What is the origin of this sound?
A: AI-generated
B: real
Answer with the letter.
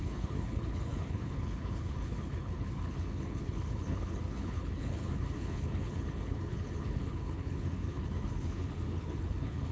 A